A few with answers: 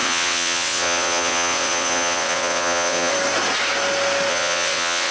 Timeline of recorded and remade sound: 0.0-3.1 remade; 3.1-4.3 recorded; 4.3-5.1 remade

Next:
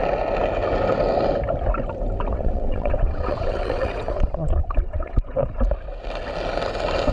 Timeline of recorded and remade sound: 0.0-2.3 recorded; 2.3-5.6 remade; 5.6-7.1 recorded

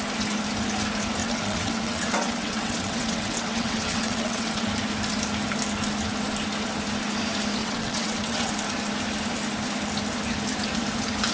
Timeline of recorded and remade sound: 0.0-1.2 recorded; 1.2-4.7 remade; 4.7-7.6 recorded; 7.6-8.5 remade; 8.5-11.3 recorded

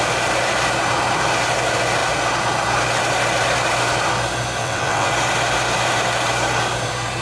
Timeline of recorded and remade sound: 0.0-4.6 recorded; 4.6-5.1 remade; 5.1-7.2 recorded

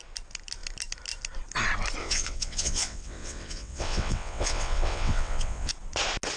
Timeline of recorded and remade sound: 0.0-2.0 recorded; 2.0-5.7 remade; 5.7-6.4 recorded

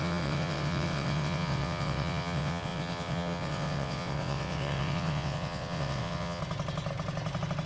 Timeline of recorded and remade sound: 0.0-6.4 remade; 6.4-7.7 recorded